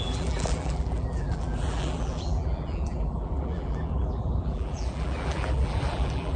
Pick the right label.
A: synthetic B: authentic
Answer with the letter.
A